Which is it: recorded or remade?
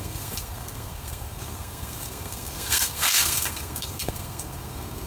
remade